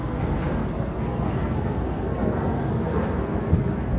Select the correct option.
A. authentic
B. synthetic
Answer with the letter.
B